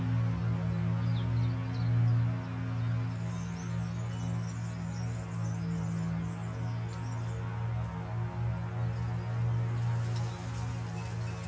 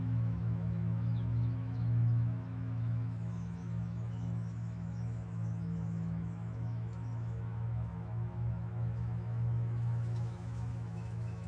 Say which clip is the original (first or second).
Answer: first